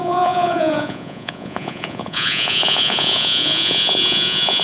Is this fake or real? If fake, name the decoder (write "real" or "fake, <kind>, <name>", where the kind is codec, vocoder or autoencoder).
fake, vocoder, Vocos